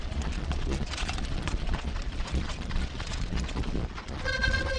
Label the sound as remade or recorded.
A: remade